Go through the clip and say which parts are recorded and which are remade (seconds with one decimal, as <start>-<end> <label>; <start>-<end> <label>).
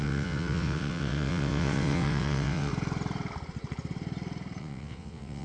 0.0-2.7 remade; 2.7-4.6 recorded; 4.6-5.4 remade